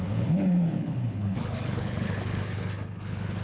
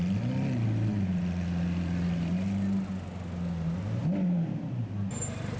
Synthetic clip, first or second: first